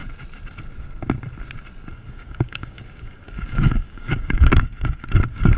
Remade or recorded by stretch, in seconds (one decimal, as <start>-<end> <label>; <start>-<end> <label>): 0.0-1.9 recorded; 1.9-5.6 remade